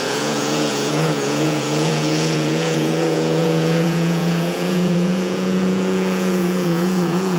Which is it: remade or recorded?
remade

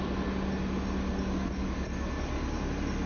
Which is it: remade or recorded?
recorded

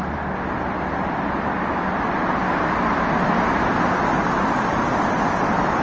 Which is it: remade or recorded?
recorded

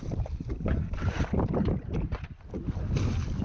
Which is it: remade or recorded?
recorded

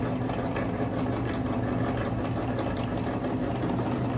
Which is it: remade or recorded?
recorded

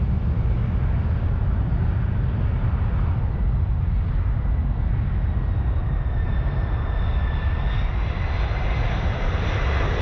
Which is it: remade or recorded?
recorded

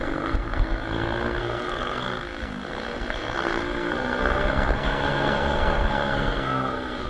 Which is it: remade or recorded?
remade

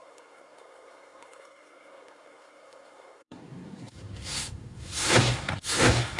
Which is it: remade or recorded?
remade